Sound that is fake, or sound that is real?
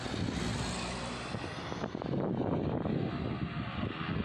real